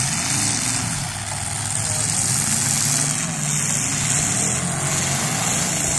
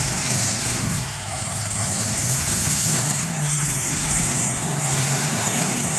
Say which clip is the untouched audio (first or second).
first